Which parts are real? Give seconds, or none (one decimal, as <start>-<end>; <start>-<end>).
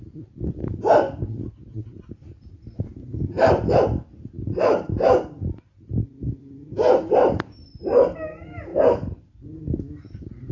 0.6-2.5; 3.4-6.1; 8.7-10.5